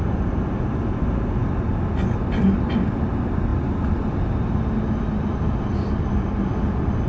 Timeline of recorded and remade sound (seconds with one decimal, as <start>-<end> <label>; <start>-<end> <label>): 0.0-7.1 recorded